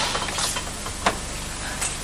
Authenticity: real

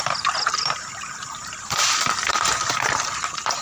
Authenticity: fake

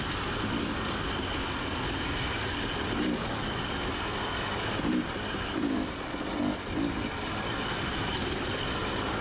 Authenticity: real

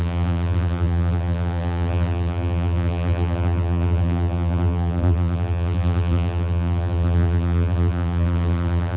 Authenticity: fake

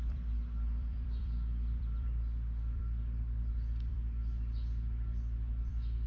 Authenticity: fake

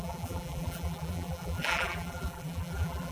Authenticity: fake